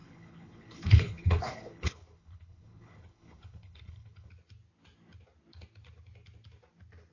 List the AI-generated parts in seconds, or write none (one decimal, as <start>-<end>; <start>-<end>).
0.0-4.3